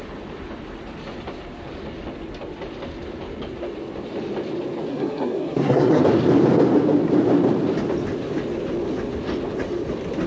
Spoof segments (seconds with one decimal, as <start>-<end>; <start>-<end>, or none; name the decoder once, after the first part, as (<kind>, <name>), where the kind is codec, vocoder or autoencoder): 4.9-6.0 (codec, SNAC)